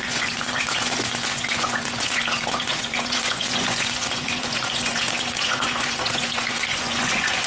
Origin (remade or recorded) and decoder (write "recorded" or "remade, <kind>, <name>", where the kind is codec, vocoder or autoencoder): remade, vocoder, Vocos